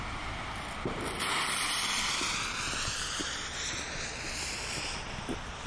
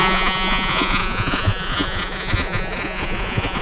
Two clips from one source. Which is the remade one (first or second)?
second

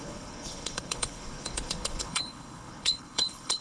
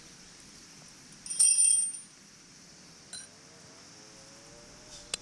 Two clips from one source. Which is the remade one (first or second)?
first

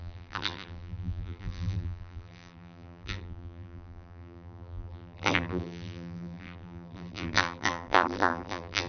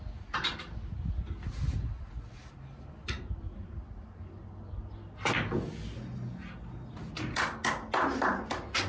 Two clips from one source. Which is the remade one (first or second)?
first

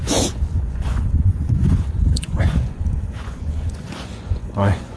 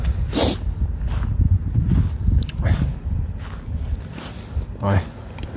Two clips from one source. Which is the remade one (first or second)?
first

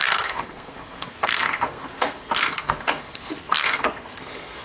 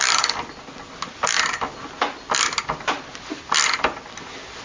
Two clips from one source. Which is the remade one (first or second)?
first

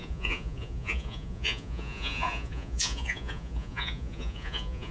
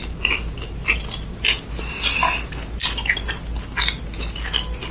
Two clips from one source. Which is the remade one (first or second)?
first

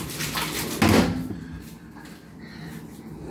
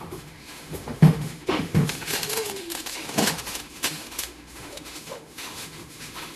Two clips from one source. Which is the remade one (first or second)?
second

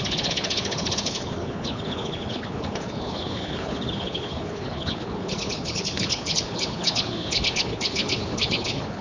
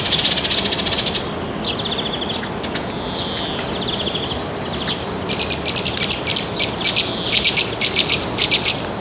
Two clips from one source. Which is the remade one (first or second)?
first